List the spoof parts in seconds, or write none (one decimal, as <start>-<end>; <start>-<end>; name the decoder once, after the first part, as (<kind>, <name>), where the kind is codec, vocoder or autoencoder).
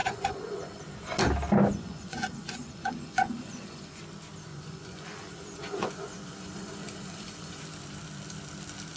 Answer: 0.0-0.8 (vocoder, Vocos); 1.7-4.0; 4.5-7.6